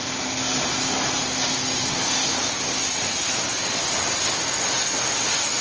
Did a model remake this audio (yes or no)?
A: no